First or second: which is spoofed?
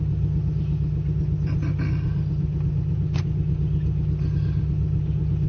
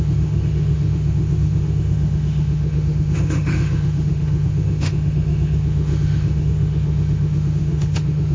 second